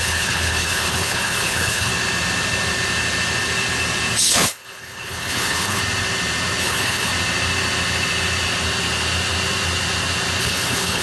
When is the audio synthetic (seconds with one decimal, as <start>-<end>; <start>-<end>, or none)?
0.0-1.9; 4.2-5.8; 6.6-7.1; 10.4-11.0